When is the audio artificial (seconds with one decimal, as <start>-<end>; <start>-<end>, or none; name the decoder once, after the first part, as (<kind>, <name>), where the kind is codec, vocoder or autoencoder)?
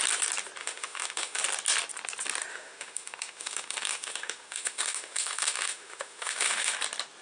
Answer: 0.6-1.4 (autoencoder, DAC-VAE); 2.5-6.8